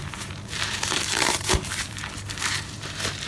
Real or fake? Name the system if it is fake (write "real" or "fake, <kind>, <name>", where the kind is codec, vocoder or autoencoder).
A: fake, vocoder, BigVGAN v2